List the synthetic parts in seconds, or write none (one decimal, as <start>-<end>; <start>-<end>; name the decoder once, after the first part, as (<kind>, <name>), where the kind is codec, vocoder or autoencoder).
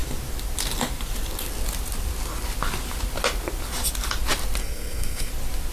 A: 4.6-5.3 (codec, SNAC)